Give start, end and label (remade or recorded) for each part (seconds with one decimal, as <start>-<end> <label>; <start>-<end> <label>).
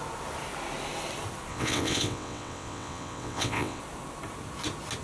0.0-1.5 recorded; 1.5-3.8 remade; 3.8-5.0 recorded